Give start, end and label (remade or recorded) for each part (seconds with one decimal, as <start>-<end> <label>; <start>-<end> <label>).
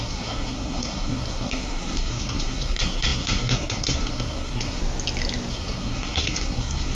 0.0-4.8 remade; 4.8-5.5 recorded; 5.5-6.9 remade